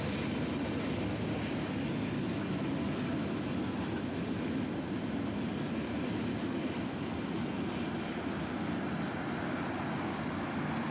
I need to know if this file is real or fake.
real